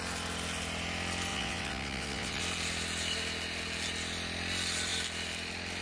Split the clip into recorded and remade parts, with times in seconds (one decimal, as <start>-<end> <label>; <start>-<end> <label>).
0.0-1.3 recorded; 1.3-2.4 remade; 2.4-5.8 recorded